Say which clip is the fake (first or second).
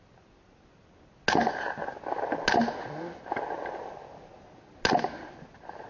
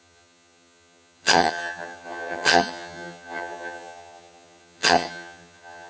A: second